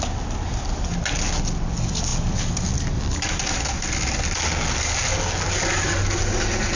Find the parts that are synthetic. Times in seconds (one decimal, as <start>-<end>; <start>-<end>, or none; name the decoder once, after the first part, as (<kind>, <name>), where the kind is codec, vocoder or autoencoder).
none